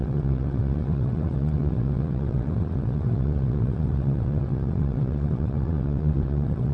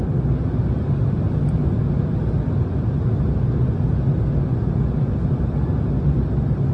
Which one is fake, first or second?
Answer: first